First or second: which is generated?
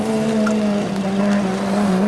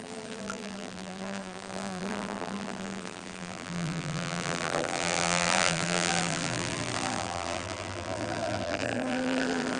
second